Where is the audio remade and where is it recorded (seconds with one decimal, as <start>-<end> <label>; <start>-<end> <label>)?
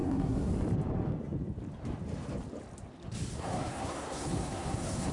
0.0-0.5 remade; 0.5-3.3 recorded; 3.3-5.1 remade